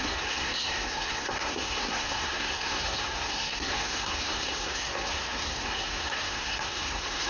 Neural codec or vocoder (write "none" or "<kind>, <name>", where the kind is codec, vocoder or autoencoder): codec, SNAC